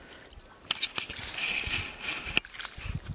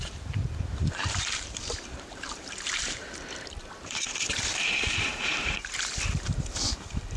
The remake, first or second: second